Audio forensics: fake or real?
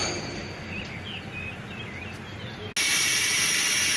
real